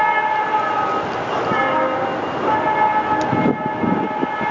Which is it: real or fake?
real